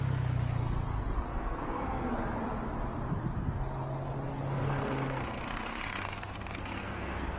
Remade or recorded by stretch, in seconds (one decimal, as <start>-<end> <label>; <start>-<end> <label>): 0.0-1.3 recorded; 1.3-2.1 remade; 2.1-4.6 recorded; 4.6-7.4 remade